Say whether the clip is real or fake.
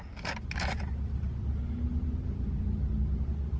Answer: real